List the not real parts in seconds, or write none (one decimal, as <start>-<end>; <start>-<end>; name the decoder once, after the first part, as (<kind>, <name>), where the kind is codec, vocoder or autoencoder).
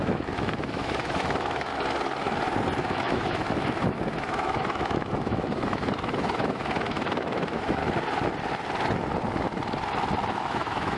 0.0-1.7 (autoencoder, DAC-VAE); 2.8-7.8; 10.3-11.0